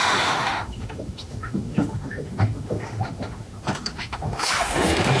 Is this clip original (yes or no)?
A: no